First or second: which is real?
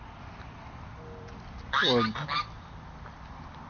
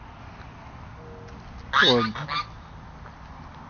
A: second